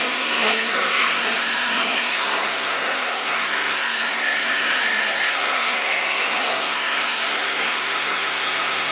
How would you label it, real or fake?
fake